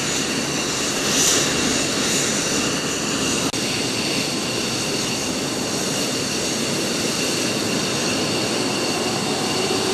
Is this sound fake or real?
real